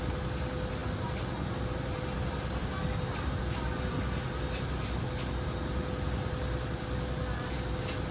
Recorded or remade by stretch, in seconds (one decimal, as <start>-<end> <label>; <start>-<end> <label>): 0.0-8.1 recorded